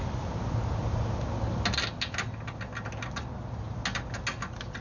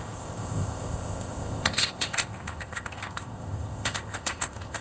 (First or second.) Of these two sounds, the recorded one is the first